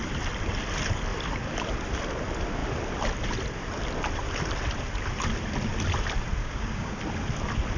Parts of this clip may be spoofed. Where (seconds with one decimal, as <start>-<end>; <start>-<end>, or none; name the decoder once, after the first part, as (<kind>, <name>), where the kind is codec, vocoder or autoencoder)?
6.4-7.0 (codec, DAC)

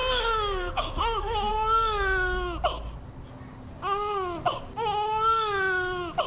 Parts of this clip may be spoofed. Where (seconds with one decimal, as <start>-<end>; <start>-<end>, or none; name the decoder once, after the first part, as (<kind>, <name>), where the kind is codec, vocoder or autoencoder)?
0.0-1.5 (codec, DAC)

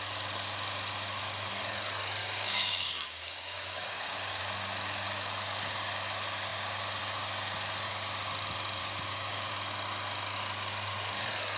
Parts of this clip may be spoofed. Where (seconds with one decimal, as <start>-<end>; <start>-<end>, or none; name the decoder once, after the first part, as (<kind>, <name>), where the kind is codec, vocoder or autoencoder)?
2.2-4.4 (codec, DAC); 8.8-9.5

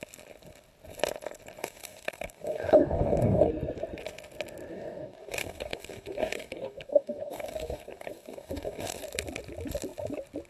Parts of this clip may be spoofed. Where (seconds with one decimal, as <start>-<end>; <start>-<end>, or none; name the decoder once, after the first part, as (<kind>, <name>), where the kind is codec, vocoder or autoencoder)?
1.6-3.5 (codec, DAC); 4.7-9.0

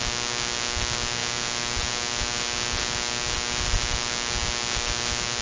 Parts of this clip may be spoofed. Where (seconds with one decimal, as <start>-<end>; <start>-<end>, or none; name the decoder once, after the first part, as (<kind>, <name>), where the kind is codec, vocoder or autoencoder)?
none

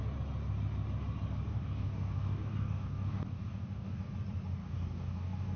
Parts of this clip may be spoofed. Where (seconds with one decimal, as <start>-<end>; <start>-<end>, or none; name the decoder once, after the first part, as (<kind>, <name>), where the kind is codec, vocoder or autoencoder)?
1.5-4.1 (codec, DAC); 4.6-5.6

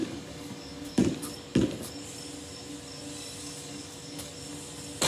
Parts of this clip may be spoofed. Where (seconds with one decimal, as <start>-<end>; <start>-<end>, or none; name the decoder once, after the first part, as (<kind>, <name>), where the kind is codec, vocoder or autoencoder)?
0.0-1.0 (codec, DAC); 3.4-4.3